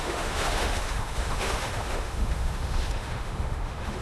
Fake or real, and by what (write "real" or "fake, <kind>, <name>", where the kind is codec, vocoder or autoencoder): fake, autoencoder, DAC-VAE